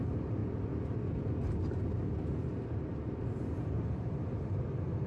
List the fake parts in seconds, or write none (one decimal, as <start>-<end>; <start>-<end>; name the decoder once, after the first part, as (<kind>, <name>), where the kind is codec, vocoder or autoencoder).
0.0-0.4 (vocoder, BigVGAN v2); 3.4-5.1